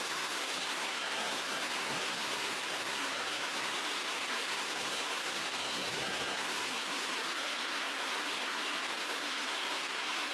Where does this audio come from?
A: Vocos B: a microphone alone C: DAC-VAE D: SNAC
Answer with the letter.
D